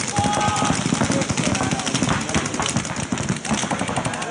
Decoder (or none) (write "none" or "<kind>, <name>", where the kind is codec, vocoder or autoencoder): none